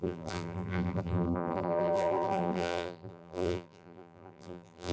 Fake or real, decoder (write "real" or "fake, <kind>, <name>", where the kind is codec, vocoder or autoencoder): fake, vocoder, BigVGAN v2